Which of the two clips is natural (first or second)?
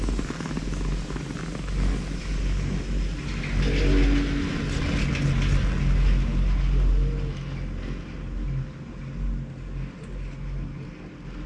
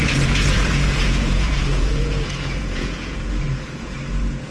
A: first